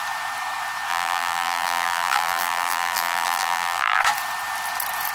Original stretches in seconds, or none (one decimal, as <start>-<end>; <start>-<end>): 0.0-0.9; 4.0-5.1